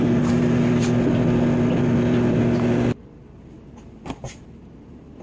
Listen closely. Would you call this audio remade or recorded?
recorded